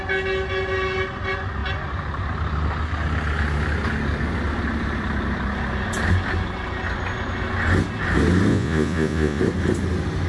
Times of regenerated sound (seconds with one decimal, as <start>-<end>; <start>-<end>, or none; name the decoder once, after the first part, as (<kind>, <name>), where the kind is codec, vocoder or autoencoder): 8.5-9.4 (vocoder, Vocos)

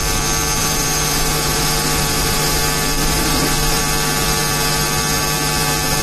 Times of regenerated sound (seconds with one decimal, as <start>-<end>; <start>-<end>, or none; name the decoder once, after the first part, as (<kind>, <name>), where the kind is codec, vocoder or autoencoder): 0.6-2.6 (vocoder, Vocos); 3.0-3.8

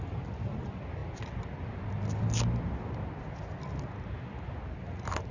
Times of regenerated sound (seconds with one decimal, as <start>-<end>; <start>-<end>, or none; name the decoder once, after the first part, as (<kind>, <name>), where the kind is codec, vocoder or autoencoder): none

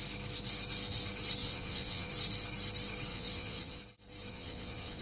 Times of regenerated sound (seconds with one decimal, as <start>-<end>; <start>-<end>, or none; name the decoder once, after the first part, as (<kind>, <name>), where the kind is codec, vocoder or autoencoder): 1.4-2.1 (vocoder, Vocos); 3.1-3.8; 4.3-5.0

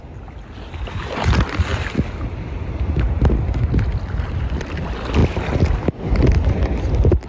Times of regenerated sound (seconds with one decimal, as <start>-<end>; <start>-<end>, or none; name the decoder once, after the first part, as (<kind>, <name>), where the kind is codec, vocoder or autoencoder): none

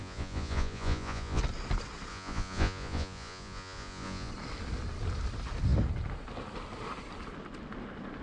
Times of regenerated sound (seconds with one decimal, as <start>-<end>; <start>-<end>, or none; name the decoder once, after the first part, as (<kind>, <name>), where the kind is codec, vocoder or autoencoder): 0.0-1.4 (vocoder, Vocos); 2.1-4.3

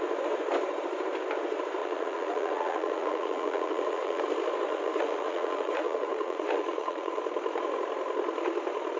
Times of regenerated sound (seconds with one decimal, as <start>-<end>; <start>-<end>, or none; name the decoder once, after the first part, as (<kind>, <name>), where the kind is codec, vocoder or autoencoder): 1.8-4.2 (vocoder, Vocos); 4.7-7.2